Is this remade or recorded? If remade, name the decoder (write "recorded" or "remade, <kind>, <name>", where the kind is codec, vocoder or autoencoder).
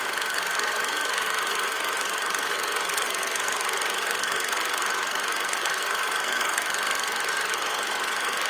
remade, codec, SNAC